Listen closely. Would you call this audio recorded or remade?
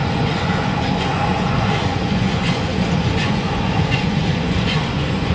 remade